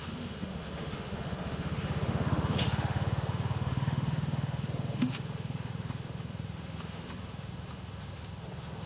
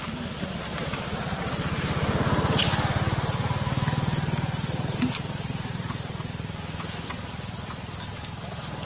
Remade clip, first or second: first